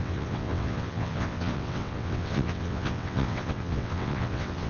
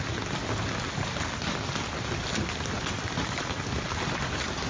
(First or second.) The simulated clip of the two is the first